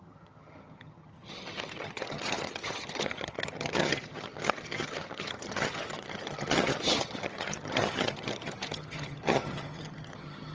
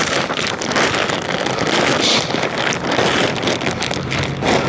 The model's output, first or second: first